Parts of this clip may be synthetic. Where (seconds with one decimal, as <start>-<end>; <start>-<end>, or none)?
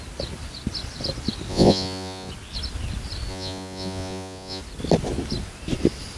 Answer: 1.5-2.3; 3.3-4.6